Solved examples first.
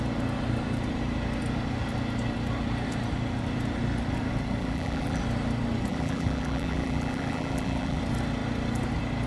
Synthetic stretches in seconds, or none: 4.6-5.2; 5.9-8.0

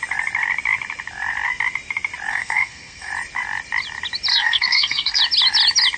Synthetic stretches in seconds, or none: 2.3-3.1; 4.3-5.2

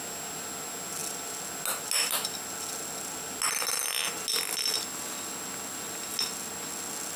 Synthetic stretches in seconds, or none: none

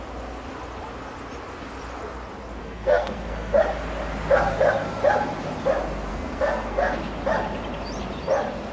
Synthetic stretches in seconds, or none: 2.6-3.6; 6.1-7.0